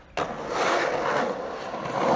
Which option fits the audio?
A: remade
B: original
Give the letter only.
B